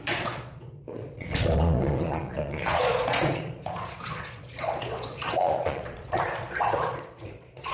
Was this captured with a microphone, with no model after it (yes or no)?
no